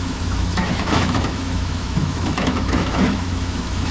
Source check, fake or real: fake